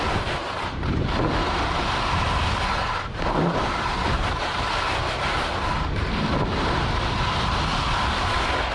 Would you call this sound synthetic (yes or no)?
no